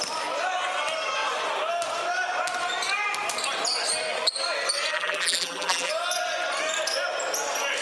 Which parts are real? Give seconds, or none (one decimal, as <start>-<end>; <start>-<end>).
0.0-4.9; 5.9-7.8